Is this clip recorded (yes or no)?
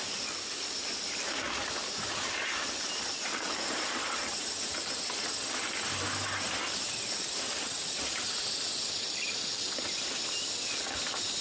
no